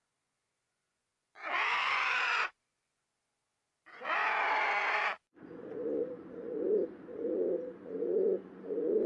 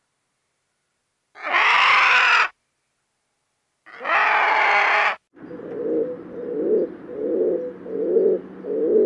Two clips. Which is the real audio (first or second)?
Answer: second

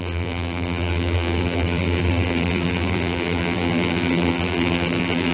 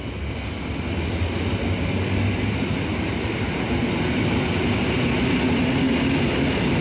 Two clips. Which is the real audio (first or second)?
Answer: second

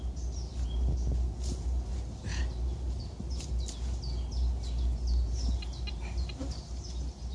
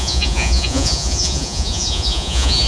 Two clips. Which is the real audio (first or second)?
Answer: first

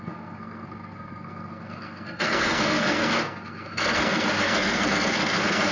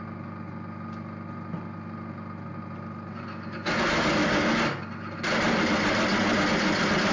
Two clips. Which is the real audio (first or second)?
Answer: second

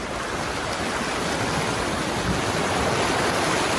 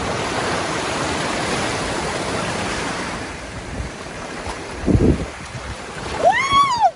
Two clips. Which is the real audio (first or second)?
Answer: first